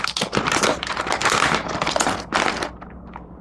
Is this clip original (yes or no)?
yes